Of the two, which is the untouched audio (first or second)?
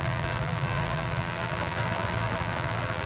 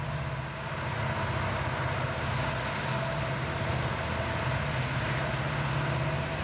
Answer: second